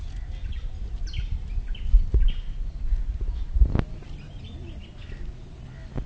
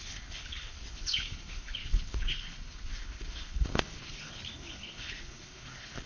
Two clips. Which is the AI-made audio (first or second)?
second